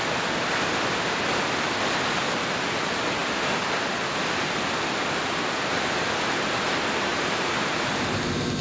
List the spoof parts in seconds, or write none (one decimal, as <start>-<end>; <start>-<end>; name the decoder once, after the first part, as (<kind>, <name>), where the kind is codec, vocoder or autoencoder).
7.1-7.9 (vocoder, BigVGAN v2)